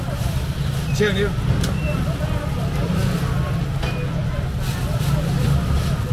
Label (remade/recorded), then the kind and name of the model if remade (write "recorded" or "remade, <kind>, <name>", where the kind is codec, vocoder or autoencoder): recorded